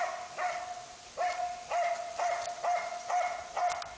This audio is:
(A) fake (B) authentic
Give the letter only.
B